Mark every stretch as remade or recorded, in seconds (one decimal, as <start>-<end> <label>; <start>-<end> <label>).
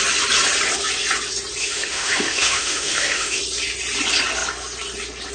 0.0-1.6 recorded; 1.6-3.4 remade; 3.4-5.3 recorded